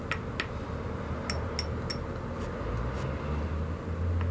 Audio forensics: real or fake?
real